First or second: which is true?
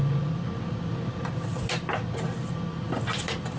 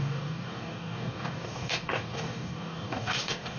first